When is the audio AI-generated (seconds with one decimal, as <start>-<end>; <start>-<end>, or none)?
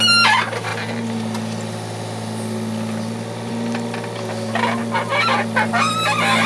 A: none